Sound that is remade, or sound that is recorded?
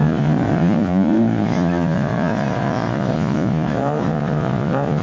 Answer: remade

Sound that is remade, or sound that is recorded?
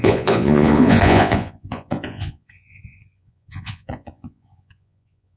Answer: remade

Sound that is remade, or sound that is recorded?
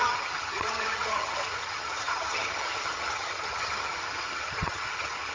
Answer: remade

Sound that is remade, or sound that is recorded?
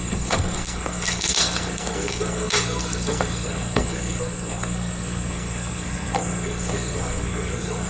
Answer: remade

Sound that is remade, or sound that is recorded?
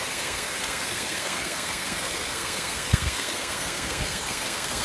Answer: remade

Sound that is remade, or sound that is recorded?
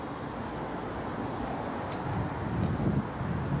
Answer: recorded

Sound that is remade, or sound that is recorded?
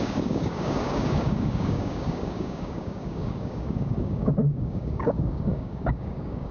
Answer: remade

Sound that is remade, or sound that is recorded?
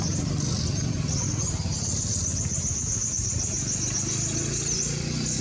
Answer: recorded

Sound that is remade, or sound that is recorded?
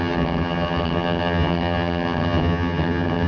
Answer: remade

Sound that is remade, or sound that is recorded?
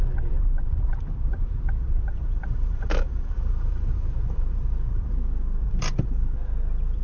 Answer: remade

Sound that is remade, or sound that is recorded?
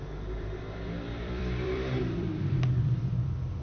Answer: remade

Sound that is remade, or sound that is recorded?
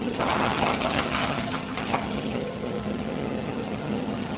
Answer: remade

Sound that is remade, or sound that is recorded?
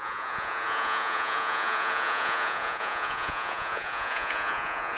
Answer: remade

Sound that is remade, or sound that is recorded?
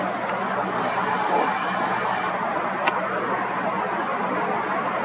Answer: recorded